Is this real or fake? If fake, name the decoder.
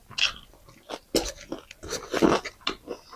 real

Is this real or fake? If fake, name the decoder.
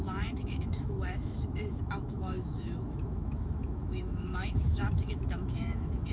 fake, autoencoder, DAC-VAE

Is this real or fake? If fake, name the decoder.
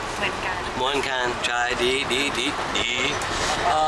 real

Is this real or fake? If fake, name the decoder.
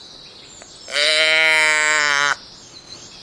real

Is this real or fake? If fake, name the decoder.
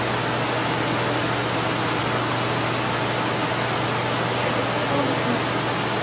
real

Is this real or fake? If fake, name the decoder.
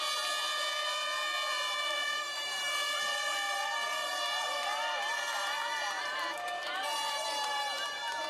real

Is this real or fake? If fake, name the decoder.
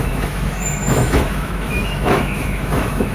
fake, autoencoder, DAC-VAE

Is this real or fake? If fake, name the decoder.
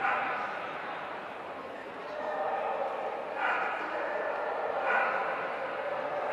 real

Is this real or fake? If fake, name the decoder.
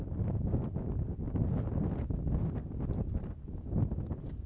real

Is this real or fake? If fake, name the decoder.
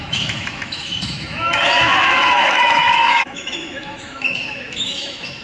fake, autoencoder, DAC-VAE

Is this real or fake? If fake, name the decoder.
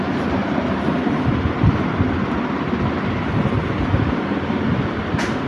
real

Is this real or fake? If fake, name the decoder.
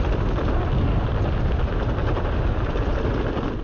real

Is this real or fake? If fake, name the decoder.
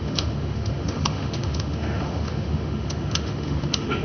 fake, autoencoder, DAC-VAE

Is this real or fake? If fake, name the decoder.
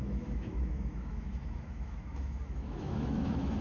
fake, autoencoder, DAC-VAE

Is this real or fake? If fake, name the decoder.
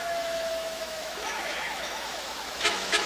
fake, autoencoder, DAC-VAE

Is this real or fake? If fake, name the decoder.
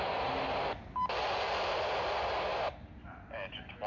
real